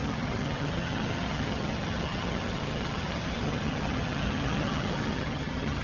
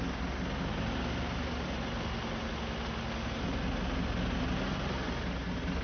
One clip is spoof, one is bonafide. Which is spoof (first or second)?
first